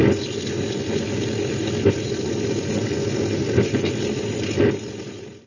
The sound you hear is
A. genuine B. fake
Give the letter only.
A